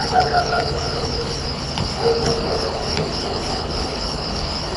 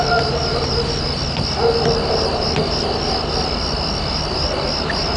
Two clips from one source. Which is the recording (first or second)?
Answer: second